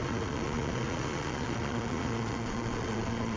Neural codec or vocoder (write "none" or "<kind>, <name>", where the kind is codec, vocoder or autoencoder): vocoder, Vocos